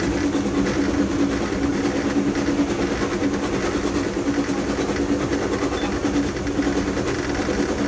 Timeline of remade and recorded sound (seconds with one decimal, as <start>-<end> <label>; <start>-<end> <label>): 0.0-7.9 recorded